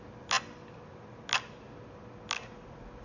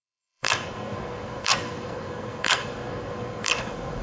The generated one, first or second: second